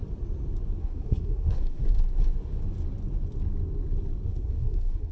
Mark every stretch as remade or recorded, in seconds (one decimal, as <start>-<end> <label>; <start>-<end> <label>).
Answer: 0.0-0.8 recorded; 0.8-1.8 remade; 1.8-4.3 recorded; 4.3-5.1 remade